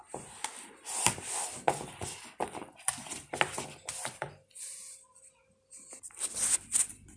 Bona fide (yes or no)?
yes